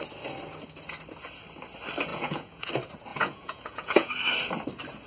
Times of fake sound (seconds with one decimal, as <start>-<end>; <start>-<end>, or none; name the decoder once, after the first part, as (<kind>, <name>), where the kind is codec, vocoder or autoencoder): 2.1-2.7 (vocoder, Vocos); 3.1-4.1